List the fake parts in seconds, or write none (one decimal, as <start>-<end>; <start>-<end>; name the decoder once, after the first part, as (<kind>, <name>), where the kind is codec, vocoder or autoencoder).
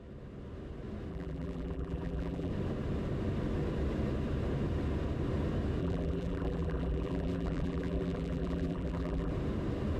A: 1.1-2.5 (vocoder, BigVGAN v2); 5.8-9.3